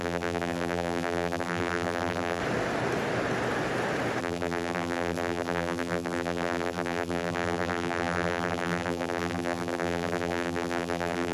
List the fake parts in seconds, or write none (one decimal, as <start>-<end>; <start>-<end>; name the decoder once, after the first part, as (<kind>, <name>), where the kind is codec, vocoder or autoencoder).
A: 0.0-2.4 (vocoder, BigVGAN v2); 4.2-11.3